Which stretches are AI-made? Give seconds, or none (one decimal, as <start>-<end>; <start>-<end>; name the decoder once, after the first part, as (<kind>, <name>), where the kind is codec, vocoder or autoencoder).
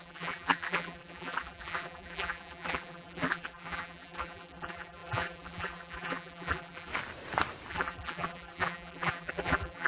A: 0.0-6.9 (vocoder, BigVGAN v2); 7.7-9.9